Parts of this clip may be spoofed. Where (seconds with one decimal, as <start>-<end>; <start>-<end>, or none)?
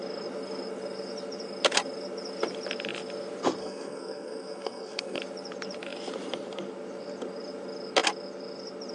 3.6-5.2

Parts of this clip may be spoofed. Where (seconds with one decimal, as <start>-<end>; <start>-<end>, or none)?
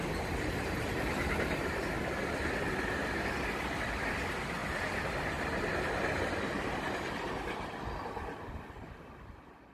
none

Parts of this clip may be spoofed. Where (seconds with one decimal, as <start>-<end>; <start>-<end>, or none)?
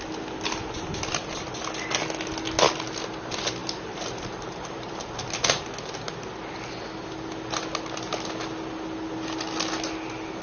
3.6-5.1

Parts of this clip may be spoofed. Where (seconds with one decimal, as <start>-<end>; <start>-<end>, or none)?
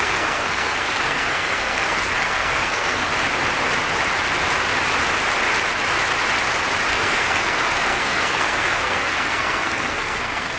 0.0-3.1; 6.9-10.6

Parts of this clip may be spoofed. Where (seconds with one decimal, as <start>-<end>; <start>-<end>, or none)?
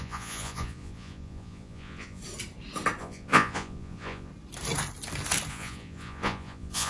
0.0-2.2; 3.0-4.3; 5.5-6.9